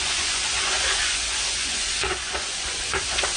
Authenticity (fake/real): fake